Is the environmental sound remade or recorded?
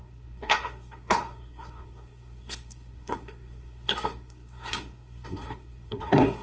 remade